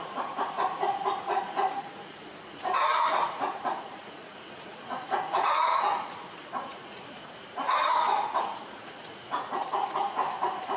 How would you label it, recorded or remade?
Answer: remade